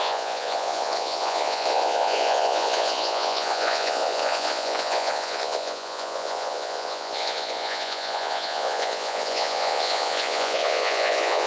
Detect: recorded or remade remade